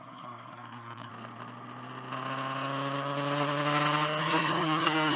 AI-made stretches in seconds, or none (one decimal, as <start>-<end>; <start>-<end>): 0.0-1.1; 4.2-5.2